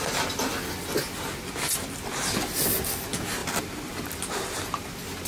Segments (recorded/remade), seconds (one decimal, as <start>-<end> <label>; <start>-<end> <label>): 0.0-1.0 recorded; 1.0-2.4 remade; 2.4-3.4 recorded; 3.4-4.6 remade; 4.6-5.3 recorded